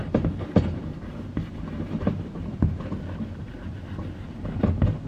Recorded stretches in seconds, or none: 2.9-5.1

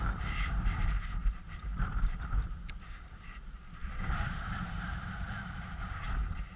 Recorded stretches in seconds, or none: 0.0-1.2; 2.7-3.8; 5.0-6.6

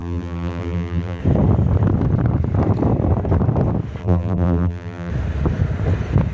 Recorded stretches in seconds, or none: 1.2-4.0; 5.1-6.3

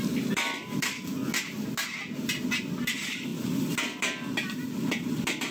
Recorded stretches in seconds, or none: 1.2-2.9; 3.3-4.0

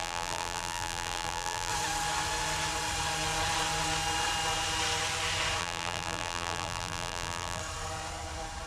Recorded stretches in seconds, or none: 1.7-5.6; 7.6-8.7

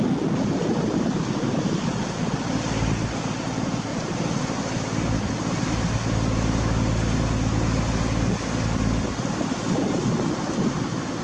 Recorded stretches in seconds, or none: 0.0-3.9; 4.4-11.2

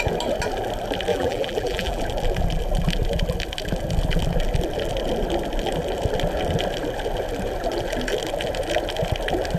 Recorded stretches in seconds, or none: 0.0-1.1; 2.0-9.6